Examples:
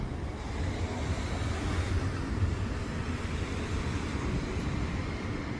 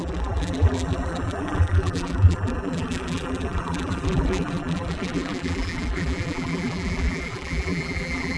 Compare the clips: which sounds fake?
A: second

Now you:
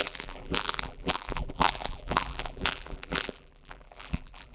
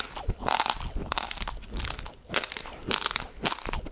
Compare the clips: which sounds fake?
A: first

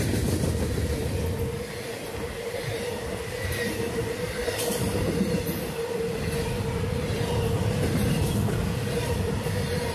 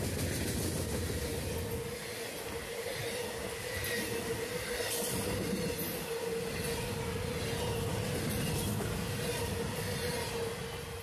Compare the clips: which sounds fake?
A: first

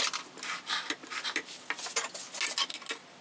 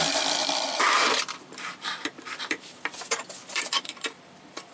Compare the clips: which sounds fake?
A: second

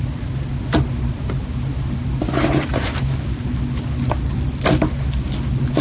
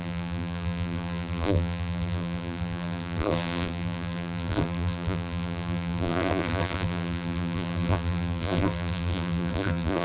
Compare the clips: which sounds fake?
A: second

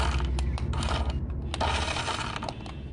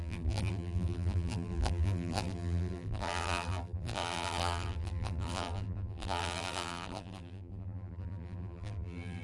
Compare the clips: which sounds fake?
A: second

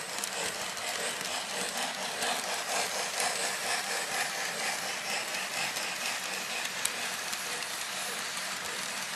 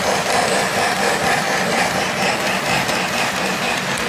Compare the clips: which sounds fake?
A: first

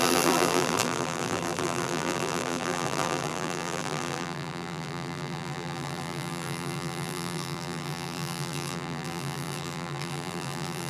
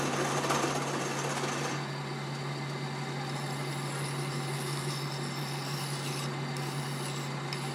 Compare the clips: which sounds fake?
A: first